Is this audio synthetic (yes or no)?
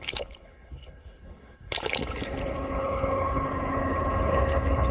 yes